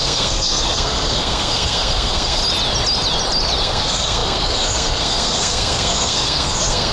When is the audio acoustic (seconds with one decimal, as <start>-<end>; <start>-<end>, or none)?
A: 2.4-3.6

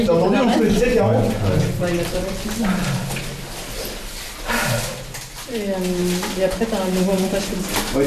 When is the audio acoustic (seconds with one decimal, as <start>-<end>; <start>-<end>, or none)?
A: 0.0-8.1

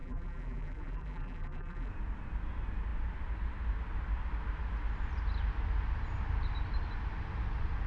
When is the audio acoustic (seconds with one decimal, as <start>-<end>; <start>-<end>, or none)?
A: 1.9-7.9

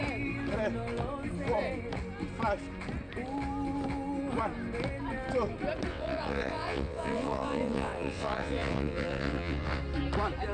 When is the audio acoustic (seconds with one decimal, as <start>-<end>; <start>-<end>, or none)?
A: 0.0-5.9; 9.8-10.5